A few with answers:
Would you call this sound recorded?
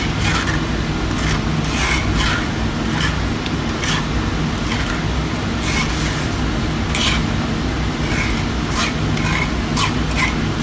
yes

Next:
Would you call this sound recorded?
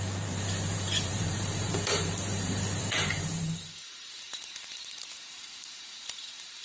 no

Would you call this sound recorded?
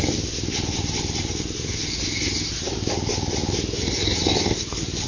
yes